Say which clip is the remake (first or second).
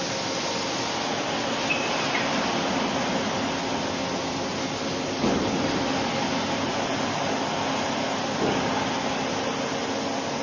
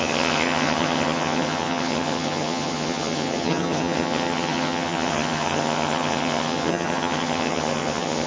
second